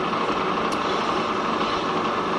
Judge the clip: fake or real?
real